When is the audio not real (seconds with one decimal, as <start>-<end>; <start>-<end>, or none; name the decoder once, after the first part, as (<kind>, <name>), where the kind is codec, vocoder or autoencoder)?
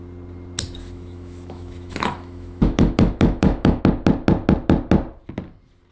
0.8-3.8 (autoencoder, DAC-VAE)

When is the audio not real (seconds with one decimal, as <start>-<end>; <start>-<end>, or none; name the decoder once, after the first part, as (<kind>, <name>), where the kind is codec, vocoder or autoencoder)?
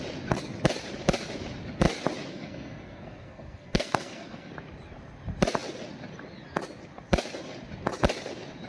2.3-4.5 (codec, SNAC)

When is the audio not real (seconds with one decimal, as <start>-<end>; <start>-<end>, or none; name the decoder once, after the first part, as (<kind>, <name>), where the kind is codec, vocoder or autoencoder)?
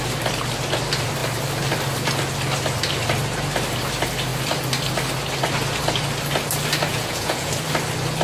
6.9-7.5 (vocoder, Vocos)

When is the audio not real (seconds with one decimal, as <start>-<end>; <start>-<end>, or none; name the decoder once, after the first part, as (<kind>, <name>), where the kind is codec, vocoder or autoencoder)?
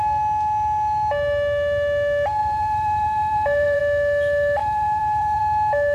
2.4-3.8 (vocoder, BigVGAN v2); 4.6-5.4